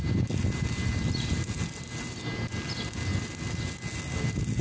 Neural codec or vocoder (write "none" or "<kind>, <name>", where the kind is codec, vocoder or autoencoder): none